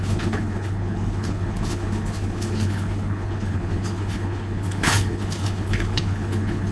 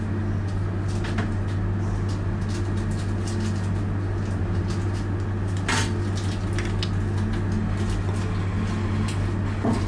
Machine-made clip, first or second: first